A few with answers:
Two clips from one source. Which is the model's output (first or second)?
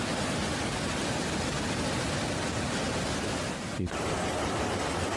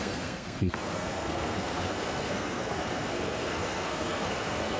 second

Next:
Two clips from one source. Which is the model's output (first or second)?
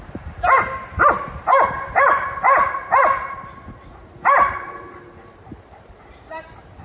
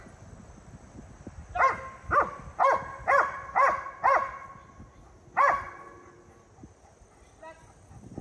first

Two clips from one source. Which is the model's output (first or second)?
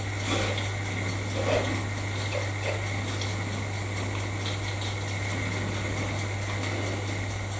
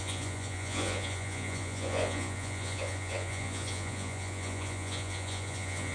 second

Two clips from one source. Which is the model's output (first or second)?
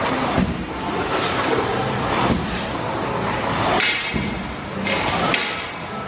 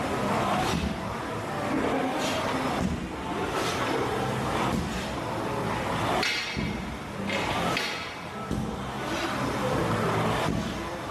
first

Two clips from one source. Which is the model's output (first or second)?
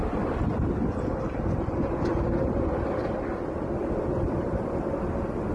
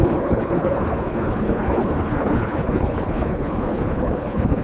second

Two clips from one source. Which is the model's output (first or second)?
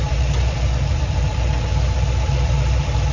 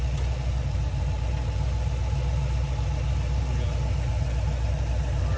first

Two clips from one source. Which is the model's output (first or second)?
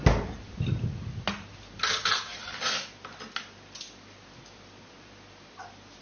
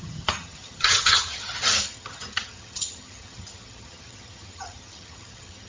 second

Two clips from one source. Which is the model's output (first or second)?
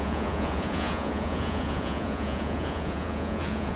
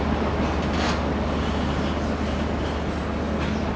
first